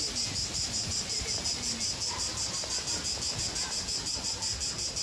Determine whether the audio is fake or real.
real